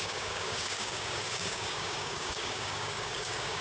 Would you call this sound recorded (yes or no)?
no